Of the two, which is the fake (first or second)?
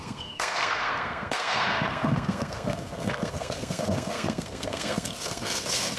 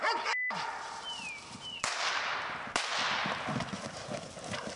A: first